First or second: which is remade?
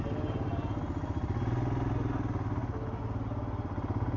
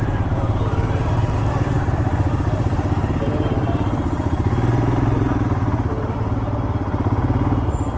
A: second